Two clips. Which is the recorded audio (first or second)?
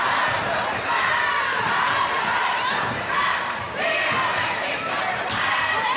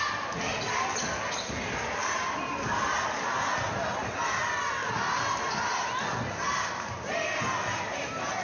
second